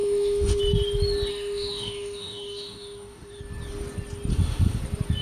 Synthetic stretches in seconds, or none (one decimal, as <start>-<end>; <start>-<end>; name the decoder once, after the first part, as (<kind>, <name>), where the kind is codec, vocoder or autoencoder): 0.0-0.6 (autoencoder, DAC-VAE); 1.3-3.4; 4.3-4.8